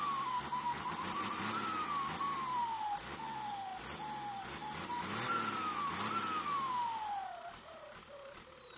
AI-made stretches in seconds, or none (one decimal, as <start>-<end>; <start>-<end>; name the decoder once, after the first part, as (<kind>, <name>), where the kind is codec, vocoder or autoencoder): none